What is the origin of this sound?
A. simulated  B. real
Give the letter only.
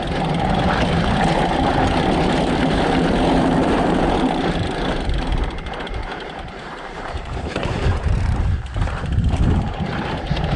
A